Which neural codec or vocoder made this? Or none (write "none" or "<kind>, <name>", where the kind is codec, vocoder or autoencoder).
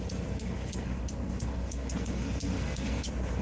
codec, SNAC